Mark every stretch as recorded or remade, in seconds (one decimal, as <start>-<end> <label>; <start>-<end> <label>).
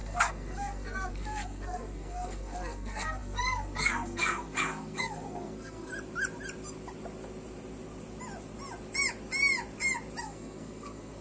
0.0-5.9 remade; 5.9-10.2 recorded; 10.2-11.2 remade